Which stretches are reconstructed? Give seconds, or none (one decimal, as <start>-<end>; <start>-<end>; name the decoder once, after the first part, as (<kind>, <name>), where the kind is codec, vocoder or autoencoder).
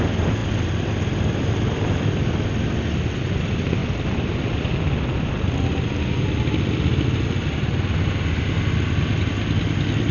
none